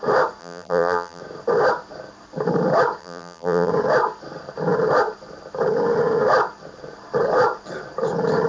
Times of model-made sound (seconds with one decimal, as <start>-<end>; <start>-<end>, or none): 0.4-1.2; 3.0-3.7